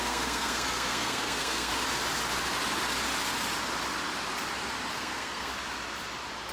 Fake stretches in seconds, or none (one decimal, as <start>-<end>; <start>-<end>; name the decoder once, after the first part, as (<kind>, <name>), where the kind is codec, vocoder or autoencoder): 0.0-1.7 (codec, SNAC); 4.9-5.5

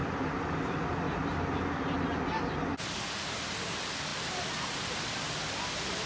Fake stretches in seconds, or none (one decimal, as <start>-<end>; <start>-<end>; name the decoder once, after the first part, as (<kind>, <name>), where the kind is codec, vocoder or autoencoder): 0.0-1.0 (vocoder, BigVGAN v2); 4.1-5.6

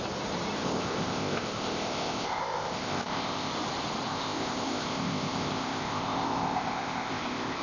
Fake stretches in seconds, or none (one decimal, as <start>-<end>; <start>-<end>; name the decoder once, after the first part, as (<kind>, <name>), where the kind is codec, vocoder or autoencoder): 0.6-3.5 (codec, ZipCodec); 4.1-7.6

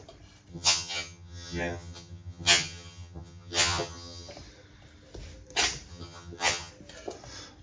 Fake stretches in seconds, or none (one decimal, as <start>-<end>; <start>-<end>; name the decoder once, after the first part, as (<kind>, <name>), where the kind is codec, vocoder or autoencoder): 0.5-4.3 (vocoder, HiFi-GAN); 5.9-6.7

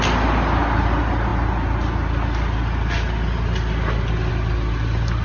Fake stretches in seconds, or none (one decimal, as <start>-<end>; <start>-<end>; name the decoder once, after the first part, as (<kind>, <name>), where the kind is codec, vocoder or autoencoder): none

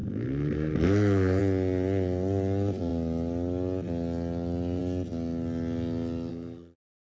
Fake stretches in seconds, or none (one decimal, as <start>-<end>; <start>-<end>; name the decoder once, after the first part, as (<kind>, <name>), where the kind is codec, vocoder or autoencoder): 0.0-1.4 (codec, SNAC); 6.3-7.2

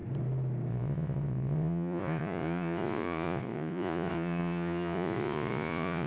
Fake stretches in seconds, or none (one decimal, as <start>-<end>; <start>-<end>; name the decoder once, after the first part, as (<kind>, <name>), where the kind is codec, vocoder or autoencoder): 0.7-6.1 (vocoder, Vocos)

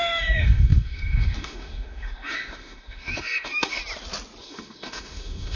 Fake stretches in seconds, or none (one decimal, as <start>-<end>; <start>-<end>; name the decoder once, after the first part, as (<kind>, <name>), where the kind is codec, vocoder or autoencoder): 0.0-3.8 (autoencoder, DAC-VAE); 4.4-5.6